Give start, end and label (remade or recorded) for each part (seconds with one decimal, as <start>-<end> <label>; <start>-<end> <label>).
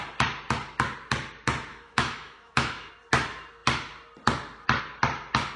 0.0-1.7 recorded; 1.7-2.9 remade; 2.9-5.6 recorded